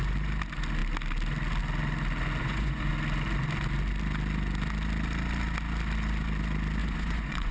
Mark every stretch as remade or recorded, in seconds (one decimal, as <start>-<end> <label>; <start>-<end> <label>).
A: 0.0-2.4 recorded; 2.4-2.9 remade; 2.9-6.8 recorded; 6.8-7.5 remade